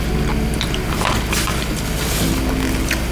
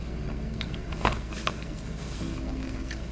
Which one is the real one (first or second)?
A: first